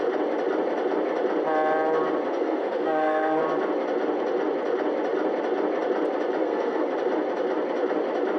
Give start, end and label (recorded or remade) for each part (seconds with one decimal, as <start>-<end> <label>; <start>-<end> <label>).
0.0-2.3 recorded; 2.3-3.4 remade; 3.4-6.4 recorded; 6.4-6.9 remade; 6.9-8.4 recorded